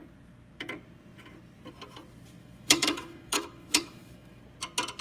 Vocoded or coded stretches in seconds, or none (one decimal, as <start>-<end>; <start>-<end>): 2.4-4.4